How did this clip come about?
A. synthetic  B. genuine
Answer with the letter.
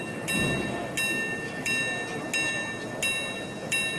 B